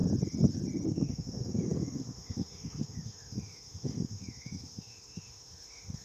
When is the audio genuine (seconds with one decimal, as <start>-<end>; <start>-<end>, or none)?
0.0-0.9